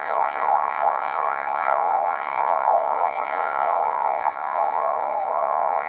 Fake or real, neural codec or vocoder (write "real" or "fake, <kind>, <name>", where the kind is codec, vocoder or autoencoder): fake, vocoder, WaveNeXt